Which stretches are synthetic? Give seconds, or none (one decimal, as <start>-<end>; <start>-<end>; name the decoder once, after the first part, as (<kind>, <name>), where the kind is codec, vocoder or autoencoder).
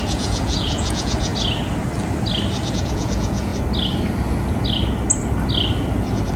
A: 0.0-1.3 (vocoder, Vocos); 2.7-3.5